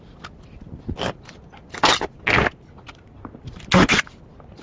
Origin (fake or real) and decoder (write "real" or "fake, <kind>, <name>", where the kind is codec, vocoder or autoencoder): real